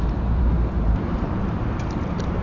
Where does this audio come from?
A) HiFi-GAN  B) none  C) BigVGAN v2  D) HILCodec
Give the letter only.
C